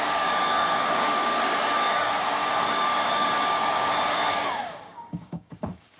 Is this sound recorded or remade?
remade